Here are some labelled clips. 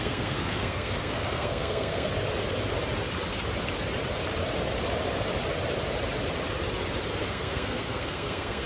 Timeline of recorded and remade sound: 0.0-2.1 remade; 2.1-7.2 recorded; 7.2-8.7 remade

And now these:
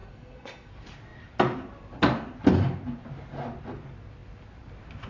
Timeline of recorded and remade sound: 0.0-0.7 remade; 0.7-5.1 recorded

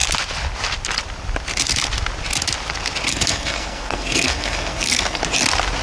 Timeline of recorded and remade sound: 0.0-3.1 recorded; 3.1-5.2 remade; 5.2-5.8 recorded

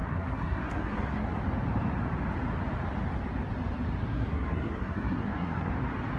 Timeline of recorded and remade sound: 0.0-1.4 remade; 1.4-4.1 recorded; 4.1-5.7 remade; 5.7-6.2 recorded

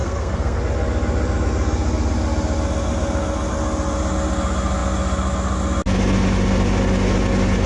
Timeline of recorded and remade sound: 0.0-0.6 remade; 0.6-7.7 recorded

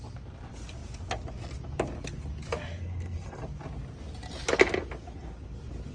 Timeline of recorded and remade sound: 0.0-2.8 recorded; 2.8-3.4 remade; 3.4-5.9 recorded